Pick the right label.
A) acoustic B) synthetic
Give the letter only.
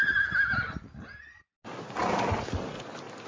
A